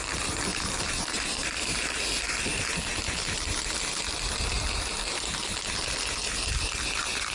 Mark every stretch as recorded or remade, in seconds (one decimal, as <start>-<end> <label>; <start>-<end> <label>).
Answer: 0.0-0.5 recorded; 0.5-2.0 remade; 2.0-7.3 recorded